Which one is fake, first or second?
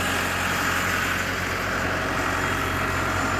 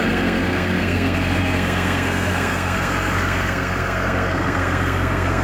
second